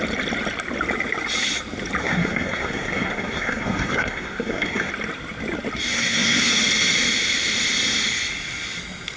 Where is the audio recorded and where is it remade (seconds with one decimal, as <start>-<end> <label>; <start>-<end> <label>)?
0.0-2.0 recorded; 2.0-4.9 remade; 4.9-5.9 recorded; 5.9-6.5 remade; 6.5-9.2 recorded